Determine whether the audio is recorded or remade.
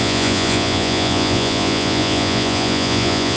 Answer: remade